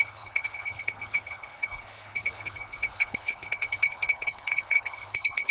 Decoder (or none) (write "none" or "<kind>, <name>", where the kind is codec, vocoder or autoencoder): codec, HILCodec